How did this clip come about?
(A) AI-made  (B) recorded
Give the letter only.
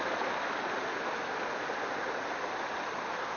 B